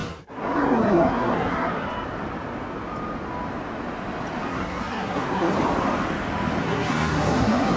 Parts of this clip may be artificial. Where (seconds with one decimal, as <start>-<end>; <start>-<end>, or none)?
0.0-1.7; 4.5-5.5; 6.6-7.8